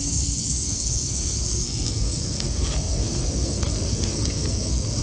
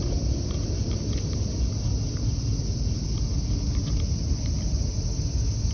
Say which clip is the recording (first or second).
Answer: second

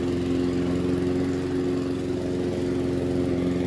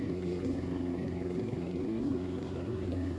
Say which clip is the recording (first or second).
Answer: first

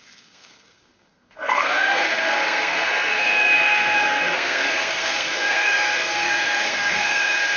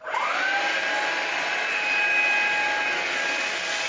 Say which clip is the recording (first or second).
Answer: second